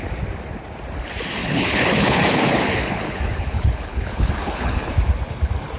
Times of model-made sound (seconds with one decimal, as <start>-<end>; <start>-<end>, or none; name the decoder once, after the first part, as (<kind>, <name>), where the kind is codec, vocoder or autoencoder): 1.4-4.9 (codec, HILCodec)